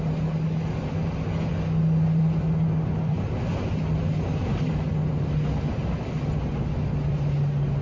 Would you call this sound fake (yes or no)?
no